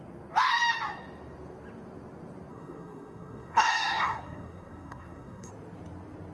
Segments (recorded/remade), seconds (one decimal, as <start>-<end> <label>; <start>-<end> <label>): 0.0-2.5 recorded; 2.5-5.5 remade; 5.5-6.3 recorded